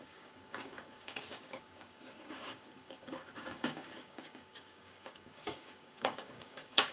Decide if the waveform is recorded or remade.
remade